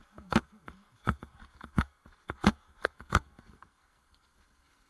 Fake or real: fake